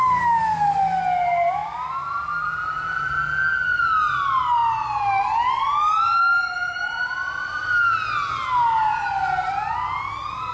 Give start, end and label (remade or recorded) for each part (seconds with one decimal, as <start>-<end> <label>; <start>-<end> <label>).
0.0-10.5 recorded